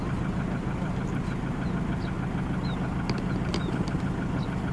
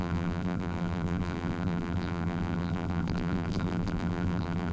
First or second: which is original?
first